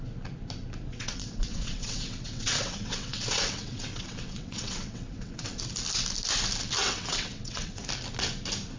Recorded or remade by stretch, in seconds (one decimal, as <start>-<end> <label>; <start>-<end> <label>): 0.0-0.9 recorded; 0.9-5.6 remade; 5.6-6.8 recorded; 6.8-7.8 remade; 7.8-8.8 recorded